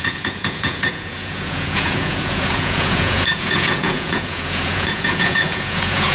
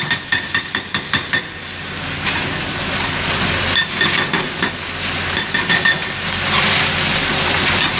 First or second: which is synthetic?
first